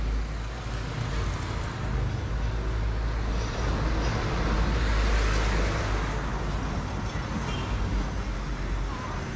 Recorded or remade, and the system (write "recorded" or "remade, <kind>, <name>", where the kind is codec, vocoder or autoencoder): recorded